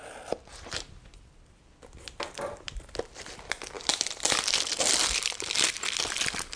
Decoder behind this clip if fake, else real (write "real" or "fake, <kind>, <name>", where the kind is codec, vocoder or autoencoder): fake, vocoder, BigVGAN v2